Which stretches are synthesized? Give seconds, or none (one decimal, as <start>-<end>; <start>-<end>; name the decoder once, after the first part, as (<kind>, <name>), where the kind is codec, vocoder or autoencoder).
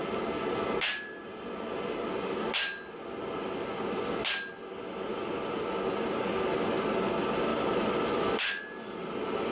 5.1-5.6 (vocoder, BigVGAN v2); 7.5-8.6